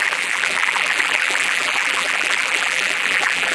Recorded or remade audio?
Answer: remade